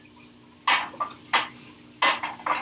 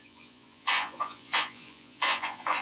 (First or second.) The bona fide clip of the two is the first